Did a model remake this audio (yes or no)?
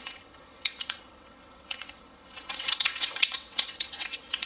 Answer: yes